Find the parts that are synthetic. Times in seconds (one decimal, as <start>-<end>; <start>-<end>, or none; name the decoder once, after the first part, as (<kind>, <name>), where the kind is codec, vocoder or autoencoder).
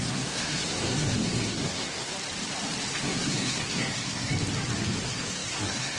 0.0-2.1 (codec, SNAC); 3.0-4.3; 5.0-6.0